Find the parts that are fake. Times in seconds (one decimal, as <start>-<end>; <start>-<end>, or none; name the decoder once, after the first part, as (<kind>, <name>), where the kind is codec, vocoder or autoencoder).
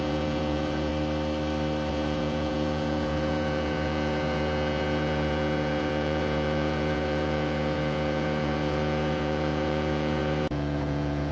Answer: 0.0-0.9 (vocoder, Vocos); 1.9-11.3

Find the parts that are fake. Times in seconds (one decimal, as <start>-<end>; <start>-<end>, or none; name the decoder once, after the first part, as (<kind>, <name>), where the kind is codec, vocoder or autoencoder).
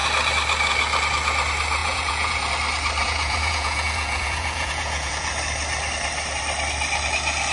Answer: 1.8-2.5 (vocoder, Vocos); 3.0-5.3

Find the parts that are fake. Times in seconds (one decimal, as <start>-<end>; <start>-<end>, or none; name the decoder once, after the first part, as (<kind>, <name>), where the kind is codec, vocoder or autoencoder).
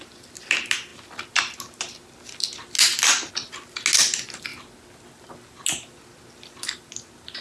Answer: none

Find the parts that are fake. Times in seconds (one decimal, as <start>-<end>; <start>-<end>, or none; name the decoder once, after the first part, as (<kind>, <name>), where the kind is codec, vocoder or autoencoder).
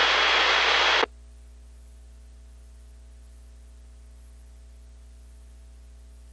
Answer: none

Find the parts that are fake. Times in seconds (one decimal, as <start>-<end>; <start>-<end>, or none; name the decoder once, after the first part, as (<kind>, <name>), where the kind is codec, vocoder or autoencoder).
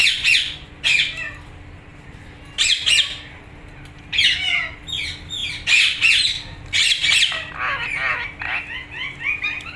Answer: 0.0-0.9 (vocoder, Vocos)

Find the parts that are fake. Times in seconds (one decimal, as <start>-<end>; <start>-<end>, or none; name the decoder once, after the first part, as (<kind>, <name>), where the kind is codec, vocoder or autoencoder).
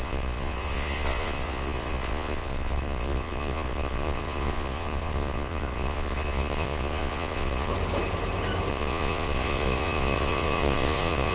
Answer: 0.0-7.7 (vocoder, Vocos); 8.7-11.3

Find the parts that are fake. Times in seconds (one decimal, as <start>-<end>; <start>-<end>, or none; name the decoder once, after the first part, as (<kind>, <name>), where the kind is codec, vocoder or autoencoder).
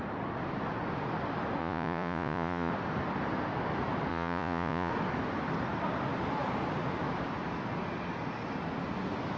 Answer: 1.6-2.7 (vocoder, Vocos); 4.1-4.9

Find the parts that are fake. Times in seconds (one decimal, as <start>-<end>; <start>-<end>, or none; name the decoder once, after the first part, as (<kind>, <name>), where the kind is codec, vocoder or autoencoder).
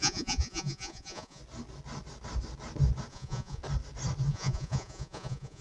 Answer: 0.0-1.4 (vocoder, Vocos); 3.1-3.6; 4.3-5.6